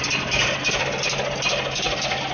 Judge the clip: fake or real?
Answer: real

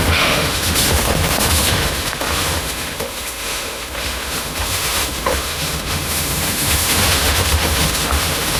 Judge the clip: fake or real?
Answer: fake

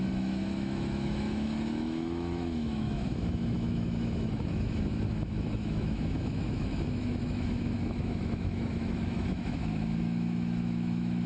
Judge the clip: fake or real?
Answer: fake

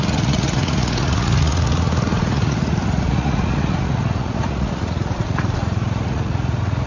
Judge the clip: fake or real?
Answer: fake